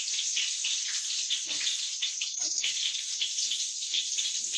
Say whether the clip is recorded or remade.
recorded